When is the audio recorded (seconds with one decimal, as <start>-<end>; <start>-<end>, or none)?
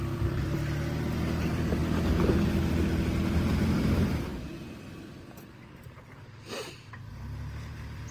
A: none